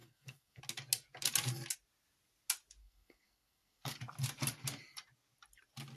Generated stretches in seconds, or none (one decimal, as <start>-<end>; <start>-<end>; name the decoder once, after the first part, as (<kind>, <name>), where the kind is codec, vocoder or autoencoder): 0.0-0.6 (codec, SNAC); 2.8-4.0